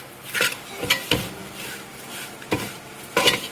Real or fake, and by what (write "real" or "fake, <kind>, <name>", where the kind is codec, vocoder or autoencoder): real